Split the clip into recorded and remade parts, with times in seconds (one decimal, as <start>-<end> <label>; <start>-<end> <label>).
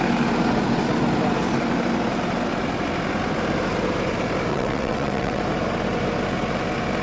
0.0-4.5 recorded; 4.5-5.4 remade; 5.4-7.0 recorded